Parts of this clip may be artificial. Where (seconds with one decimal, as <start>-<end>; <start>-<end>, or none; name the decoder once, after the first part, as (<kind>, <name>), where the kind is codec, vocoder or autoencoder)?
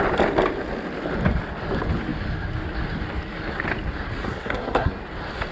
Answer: 4.3-4.9 (codec, SNAC)